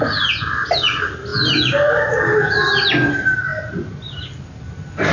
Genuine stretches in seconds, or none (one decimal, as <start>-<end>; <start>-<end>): 0.0-5.1